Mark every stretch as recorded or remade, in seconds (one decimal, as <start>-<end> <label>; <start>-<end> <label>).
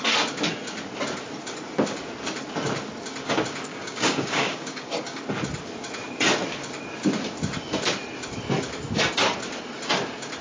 0.0-3.7 recorded; 3.7-5.2 remade; 5.2-10.4 recorded